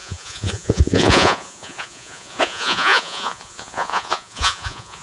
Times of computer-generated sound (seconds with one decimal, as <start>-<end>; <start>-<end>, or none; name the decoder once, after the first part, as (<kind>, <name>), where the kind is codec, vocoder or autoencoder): 0.0-5.0 (vocoder, Vocos)

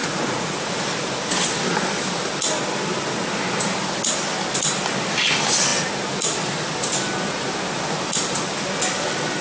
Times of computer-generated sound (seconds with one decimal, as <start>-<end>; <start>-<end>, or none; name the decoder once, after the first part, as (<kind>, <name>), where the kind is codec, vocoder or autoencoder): 0.0-0.8 (vocoder, Vocos)

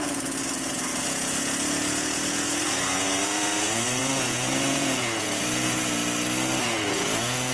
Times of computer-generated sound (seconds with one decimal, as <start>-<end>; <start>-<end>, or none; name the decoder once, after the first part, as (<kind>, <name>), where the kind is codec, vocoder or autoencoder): 0.0-6.0 (vocoder, Vocos); 6.6-7.5

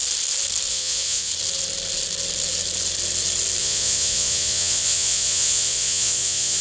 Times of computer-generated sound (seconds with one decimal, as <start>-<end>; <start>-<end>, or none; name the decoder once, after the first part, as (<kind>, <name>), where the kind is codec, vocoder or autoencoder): 0.7-1.3 (vocoder, Vocos); 3.6-6.6

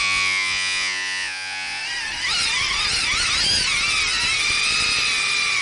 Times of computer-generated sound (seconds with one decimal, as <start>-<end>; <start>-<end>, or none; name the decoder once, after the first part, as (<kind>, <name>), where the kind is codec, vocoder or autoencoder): 0.0-1.8 (vocoder, Vocos)

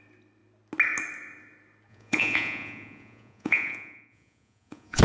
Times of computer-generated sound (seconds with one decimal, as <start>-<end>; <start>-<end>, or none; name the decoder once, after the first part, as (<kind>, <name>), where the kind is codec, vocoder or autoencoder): 1.9-5.0 (vocoder, Vocos)